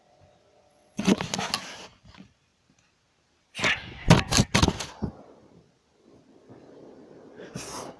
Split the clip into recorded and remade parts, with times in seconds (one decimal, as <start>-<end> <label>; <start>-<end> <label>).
0.0-0.7 recorded; 0.7-1.2 remade; 1.2-8.0 recorded